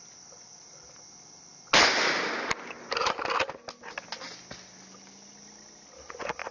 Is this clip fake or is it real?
real